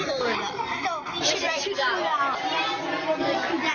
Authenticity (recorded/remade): recorded